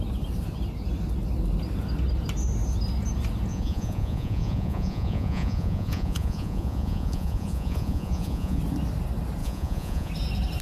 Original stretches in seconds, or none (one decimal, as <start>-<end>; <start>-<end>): 0.0-3.5; 8.6-9.4; 10.1-10.6